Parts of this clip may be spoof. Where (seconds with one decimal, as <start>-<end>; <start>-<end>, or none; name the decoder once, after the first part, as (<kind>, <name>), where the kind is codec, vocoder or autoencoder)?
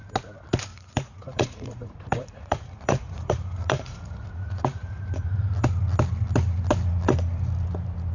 0.7-5.4 (vocoder, Vocos)